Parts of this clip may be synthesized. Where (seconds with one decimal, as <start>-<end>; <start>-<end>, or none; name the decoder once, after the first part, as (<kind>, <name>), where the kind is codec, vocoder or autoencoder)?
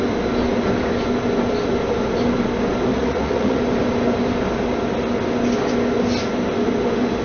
2.9-3.6 (vocoder, Vocos)